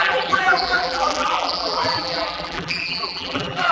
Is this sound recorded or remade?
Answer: remade